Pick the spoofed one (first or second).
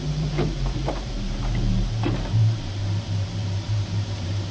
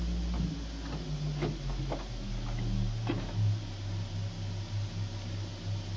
first